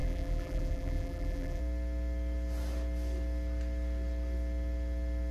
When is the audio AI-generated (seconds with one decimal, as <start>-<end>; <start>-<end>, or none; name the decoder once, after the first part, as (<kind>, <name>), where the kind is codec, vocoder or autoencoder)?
0.0-1.6 (vocoder, BigVGAN v2)